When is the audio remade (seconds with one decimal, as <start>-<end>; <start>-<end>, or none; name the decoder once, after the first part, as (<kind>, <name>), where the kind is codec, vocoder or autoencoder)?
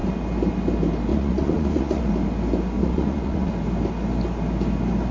1.1-2.1 (vocoder, Vocos); 2.8-3.5